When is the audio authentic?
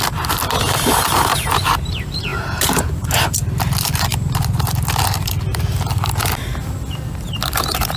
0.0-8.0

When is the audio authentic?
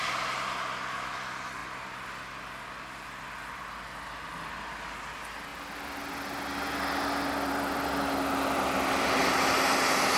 0.0-10.2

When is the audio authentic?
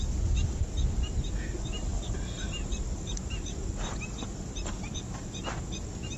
none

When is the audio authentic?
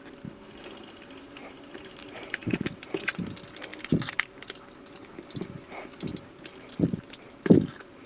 0.0-1.4; 3.2-6.1; 7.0-8.1